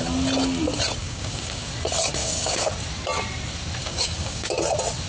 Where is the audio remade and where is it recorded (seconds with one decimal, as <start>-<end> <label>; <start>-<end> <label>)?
0.0-1.0 recorded; 1.0-1.7 remade; 1.7-2.2 recorded; 2.2-2.7 remade; 2.7-3.8 recorded; 3.8-4.5 remade; 4.5-5.1 recorded